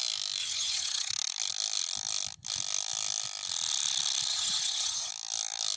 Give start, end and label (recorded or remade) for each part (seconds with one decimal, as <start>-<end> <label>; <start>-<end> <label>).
0.0-0.4 recorded; 0.4-1.1 remade; 1.1-4.3 recorded; 4.3-5.1 remade; 5.1-5.8 recorded